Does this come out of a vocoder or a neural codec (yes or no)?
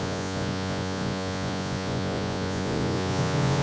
yes